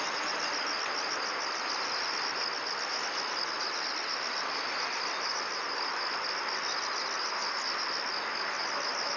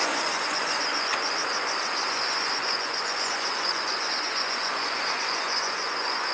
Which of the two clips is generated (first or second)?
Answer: second